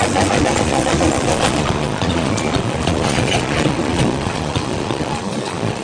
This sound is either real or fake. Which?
fake